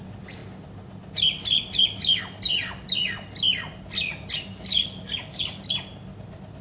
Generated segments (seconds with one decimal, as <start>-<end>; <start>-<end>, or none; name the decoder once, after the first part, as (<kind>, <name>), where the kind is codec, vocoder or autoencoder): 4.7-5.6 (codec, DAC)